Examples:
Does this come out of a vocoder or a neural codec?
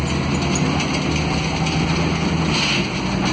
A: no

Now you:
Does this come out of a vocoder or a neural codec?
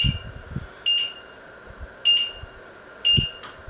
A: no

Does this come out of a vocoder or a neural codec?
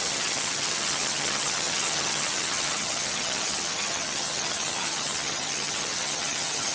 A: yes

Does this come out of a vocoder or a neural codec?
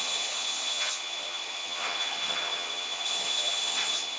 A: yes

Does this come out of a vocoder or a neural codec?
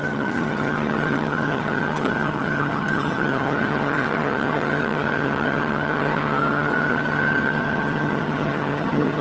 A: yes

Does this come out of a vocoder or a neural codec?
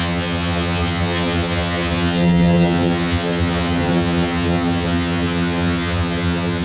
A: yes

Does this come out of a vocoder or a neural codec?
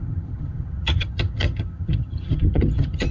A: yes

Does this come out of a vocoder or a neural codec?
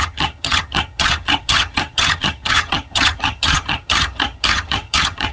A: yes